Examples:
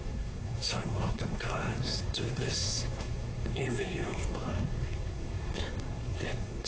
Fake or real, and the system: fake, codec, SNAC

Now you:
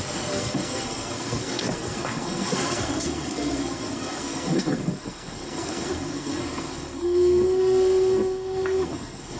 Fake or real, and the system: fake, codec, SNAC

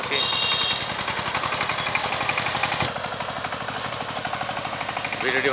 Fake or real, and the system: real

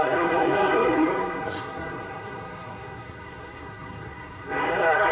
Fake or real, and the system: fake, codec, SNAC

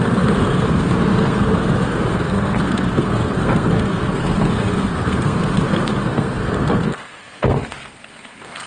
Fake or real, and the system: fake, codec, SNAC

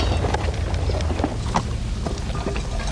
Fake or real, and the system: real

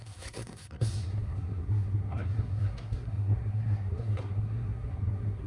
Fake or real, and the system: fake, codec, SNAC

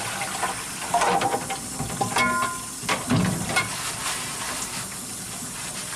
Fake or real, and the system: real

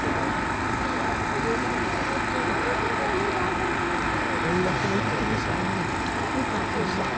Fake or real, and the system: real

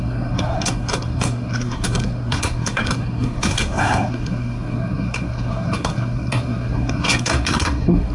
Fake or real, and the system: fake, codec, SNAC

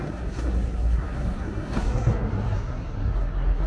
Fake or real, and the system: fake, codec, SNAC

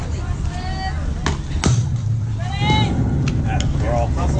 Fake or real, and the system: real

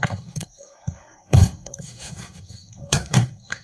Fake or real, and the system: fake, codec, SNAC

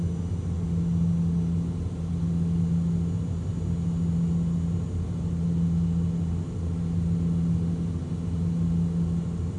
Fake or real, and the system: real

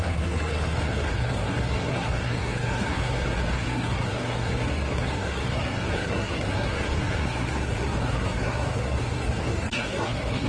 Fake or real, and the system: fake, codec, SNAC